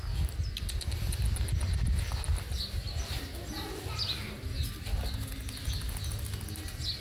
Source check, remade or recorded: recorded